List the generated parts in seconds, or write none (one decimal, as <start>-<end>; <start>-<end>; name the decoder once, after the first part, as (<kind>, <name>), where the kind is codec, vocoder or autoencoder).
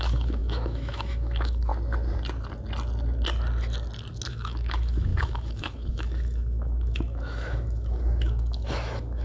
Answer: 0.0-1.7 (autoencoder, DAC-VAE); 4.3-9.2